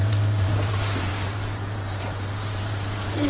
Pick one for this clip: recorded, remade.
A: remade